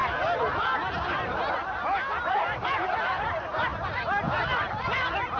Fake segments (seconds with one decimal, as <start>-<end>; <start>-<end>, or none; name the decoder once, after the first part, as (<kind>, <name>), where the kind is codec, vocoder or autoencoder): none